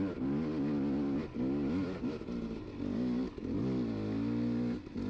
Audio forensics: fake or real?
real